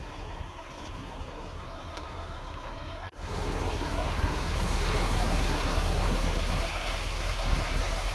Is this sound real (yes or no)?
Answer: no